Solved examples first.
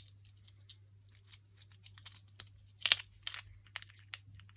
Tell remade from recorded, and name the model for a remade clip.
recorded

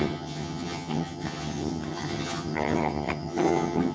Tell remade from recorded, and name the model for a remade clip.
remade, vocoder, HiFi-GAN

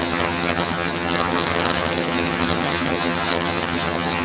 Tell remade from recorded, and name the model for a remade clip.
remade, vocoder, HiFi-GAN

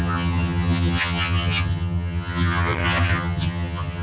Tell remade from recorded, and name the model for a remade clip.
remade, vocoder, HiFi-GAN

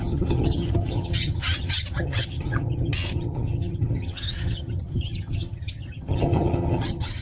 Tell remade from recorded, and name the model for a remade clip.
remade, vocoder, HiFi-GAN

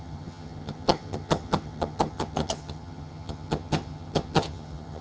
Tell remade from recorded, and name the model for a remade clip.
remade, vocoder, HiFi-GAN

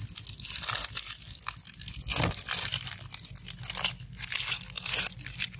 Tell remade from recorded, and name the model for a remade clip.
recorded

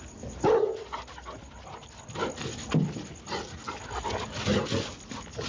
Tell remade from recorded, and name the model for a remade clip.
recorded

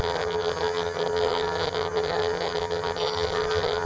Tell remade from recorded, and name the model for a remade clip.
remade, vocoder, HiFi-GAN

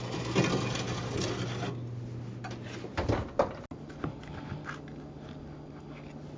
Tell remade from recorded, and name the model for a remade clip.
recorded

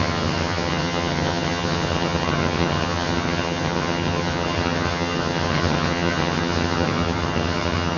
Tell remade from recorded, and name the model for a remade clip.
remade, vocoder, HiFi-GAN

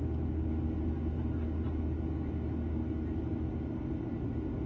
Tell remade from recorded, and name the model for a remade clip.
recorded